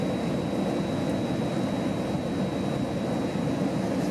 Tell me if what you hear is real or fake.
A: real